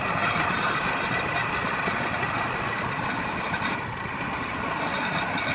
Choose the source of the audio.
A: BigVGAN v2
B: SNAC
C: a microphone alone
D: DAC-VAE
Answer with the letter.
C